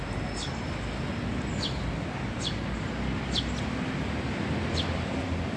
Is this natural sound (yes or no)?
yes